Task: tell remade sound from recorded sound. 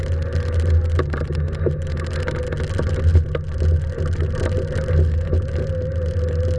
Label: recorded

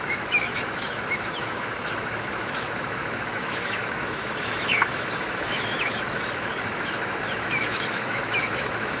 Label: remade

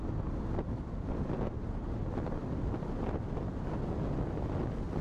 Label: recorded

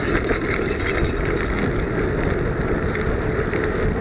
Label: recorded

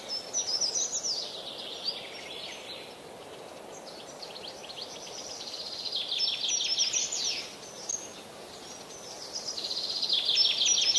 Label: recorded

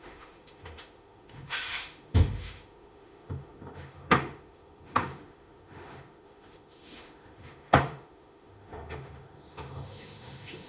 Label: remade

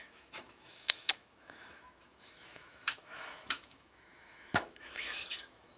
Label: remade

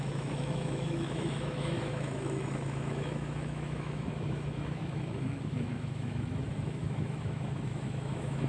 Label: remade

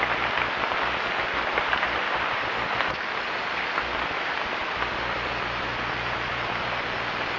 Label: recorded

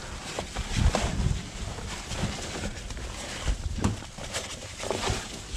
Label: recorded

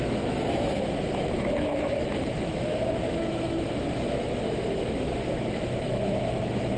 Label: remade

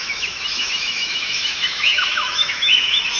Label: remade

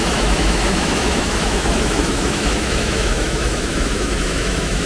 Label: remade